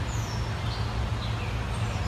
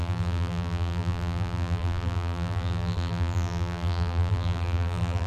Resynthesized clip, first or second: second